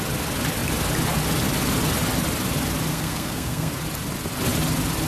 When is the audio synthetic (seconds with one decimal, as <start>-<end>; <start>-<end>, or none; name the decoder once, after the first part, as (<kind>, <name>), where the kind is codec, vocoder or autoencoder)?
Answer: 2.9-3.7 (codec, SNAC)